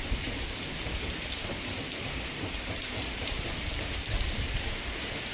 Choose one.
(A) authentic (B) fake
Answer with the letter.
B